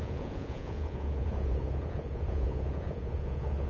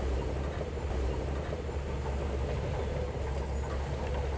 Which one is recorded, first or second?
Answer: second